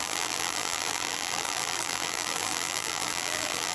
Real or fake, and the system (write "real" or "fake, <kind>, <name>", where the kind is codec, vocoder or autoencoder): fake, vocoder, BigVGAN v2